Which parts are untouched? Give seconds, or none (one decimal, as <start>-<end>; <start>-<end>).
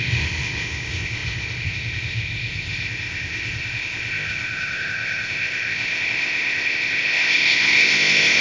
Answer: none